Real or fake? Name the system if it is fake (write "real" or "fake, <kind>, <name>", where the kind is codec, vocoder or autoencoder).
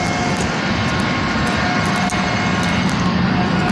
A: real